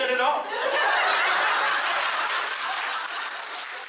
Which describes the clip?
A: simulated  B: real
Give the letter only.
B